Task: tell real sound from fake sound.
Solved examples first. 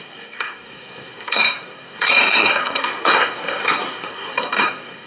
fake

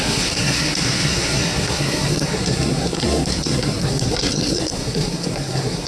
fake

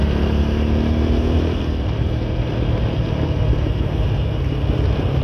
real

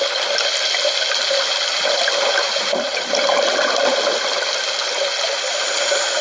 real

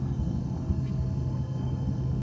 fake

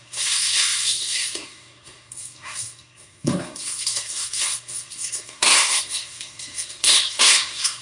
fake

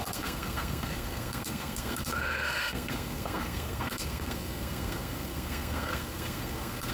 fake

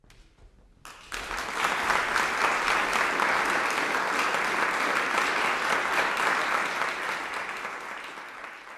real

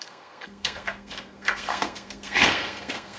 fake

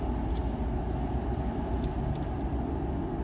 real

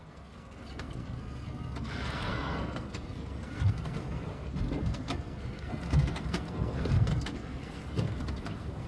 fake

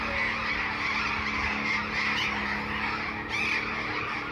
real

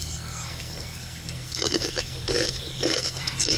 fake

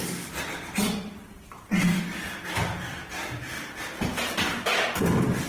real